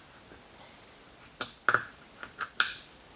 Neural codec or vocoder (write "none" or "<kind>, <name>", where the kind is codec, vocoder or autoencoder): none